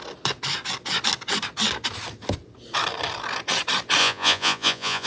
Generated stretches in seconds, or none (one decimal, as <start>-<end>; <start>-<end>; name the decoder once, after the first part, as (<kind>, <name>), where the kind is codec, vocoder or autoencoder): 4.0-5.1 (vocoder, Vocos)